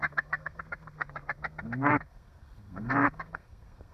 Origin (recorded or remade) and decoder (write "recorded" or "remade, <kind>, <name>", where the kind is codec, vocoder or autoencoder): remade, codec, SNAC